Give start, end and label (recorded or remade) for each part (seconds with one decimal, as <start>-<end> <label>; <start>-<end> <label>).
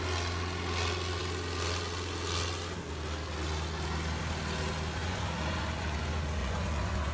0.0-5.0 recorded; 5.0-6.0 remade; 6.0-6.4 recorded; 6.4-7.1 remade